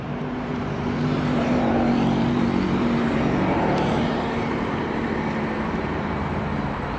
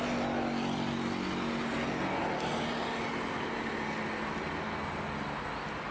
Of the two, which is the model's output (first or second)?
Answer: first